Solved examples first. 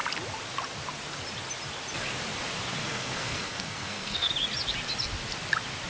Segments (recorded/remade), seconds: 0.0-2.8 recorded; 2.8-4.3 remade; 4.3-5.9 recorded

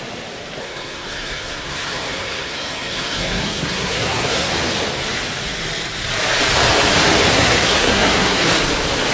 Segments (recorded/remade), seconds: 0.0-0.6 recorded; 0.6-4.5 remade; 4.5-7.3 recorded; 7.3-8.4 remade; 8.4-9.1 recorded

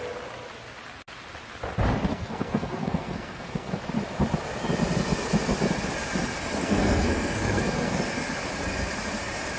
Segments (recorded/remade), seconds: 0.0-2.1 recorded; 2.1-3.8 remade; 3.8-6.6 recorded; 6.6-8.0 remade; 8.0-9.6 recorded

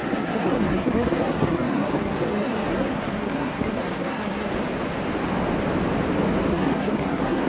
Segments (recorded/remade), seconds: 0.0-4.5 remade; 4.5-6.5 recorded; 6.5-7.5 remade

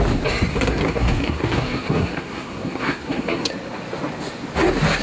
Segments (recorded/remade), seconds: 0.0-0.5 recorded; 0.5-3.5 remade; 3.5-5.0 recorded

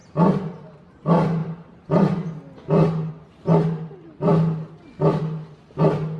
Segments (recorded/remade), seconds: 0.0-6.2 recorded